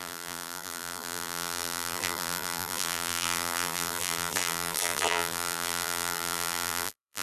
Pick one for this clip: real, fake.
fake